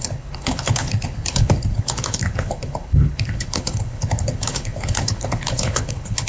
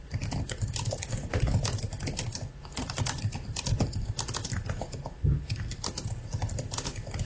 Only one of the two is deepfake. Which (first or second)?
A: first